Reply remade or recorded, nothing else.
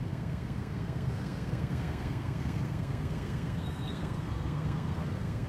remade